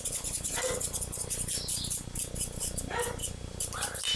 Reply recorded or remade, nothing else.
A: recorded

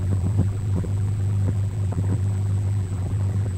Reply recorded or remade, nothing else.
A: remade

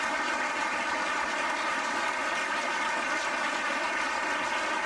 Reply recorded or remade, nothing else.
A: recorded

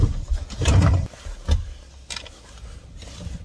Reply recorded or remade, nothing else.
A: recorded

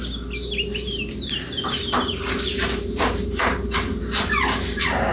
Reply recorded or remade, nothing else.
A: remade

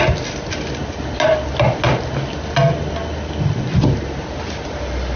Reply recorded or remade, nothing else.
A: recorded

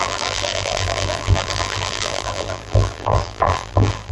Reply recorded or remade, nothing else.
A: remade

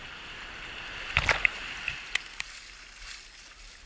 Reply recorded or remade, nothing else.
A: recorded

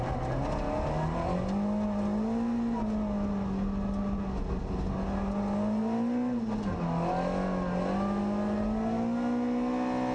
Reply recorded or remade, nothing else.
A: recorded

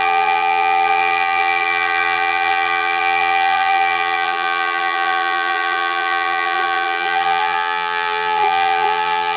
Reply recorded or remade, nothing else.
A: remade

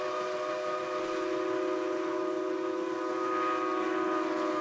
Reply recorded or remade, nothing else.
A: recorded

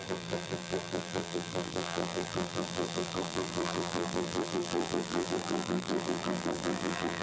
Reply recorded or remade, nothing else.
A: remade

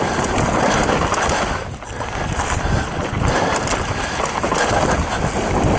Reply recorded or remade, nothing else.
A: recorded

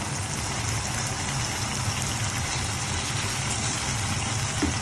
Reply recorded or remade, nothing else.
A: recorded